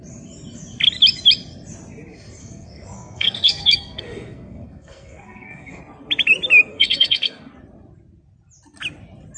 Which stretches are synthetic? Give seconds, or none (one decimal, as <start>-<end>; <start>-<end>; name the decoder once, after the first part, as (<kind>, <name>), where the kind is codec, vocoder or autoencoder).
2.4-5.8 (codec, SNAC); 6.7-7.5